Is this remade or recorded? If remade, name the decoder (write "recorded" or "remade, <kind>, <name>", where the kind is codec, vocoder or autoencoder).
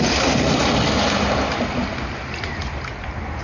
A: recorded